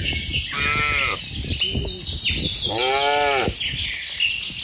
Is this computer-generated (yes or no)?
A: no